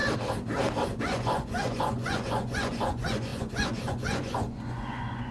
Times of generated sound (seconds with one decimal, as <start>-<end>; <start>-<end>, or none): 1.0-5.3